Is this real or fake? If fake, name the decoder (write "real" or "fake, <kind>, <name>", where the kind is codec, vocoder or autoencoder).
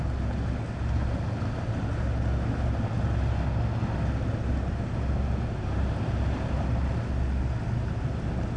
real